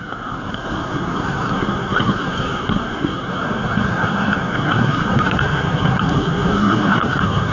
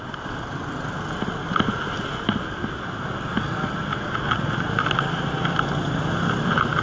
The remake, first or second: first